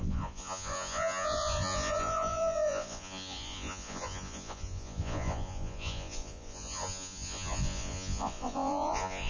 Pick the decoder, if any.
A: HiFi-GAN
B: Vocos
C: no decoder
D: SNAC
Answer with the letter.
B